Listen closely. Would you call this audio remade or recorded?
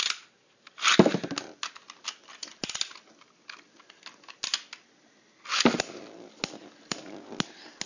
recorded